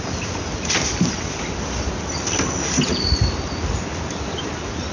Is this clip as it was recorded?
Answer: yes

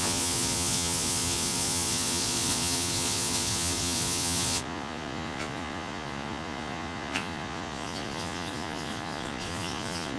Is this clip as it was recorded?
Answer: no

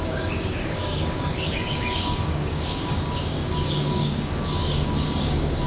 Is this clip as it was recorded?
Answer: no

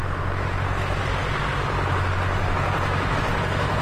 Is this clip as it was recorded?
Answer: yes